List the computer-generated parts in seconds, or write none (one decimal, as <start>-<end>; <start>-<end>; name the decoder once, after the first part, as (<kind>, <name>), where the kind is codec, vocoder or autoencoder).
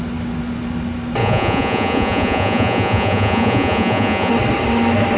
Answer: 1.2-4.3 (vocoder, Vocos)